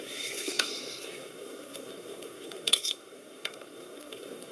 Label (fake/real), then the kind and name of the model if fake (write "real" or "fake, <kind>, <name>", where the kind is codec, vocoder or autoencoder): fake, codec, SNAC